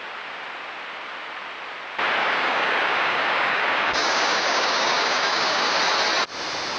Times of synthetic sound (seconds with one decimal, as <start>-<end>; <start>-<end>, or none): 2.2-5.8